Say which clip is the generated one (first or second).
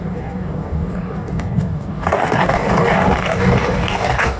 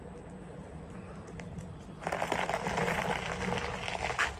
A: first